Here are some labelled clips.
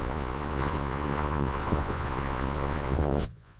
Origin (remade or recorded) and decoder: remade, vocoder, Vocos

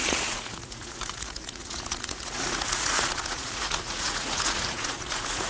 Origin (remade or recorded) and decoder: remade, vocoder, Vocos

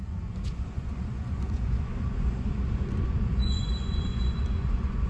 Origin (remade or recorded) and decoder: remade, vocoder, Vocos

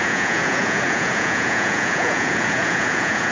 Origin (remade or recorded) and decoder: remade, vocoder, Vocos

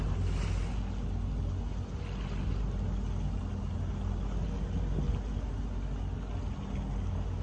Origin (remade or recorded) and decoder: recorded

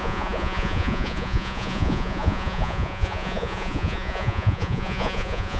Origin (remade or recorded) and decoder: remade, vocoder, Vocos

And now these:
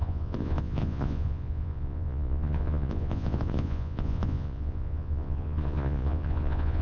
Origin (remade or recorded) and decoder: remade, vocoder, Vocos